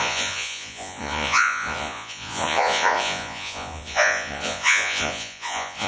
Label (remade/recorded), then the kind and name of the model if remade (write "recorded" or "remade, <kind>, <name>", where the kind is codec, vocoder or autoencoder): remade, vocoder, Vocos